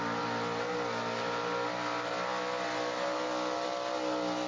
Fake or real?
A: real